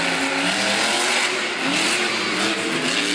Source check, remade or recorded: recorded